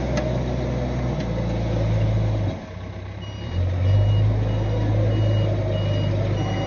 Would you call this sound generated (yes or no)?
no